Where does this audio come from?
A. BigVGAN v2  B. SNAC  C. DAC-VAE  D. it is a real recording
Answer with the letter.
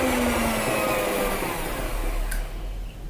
D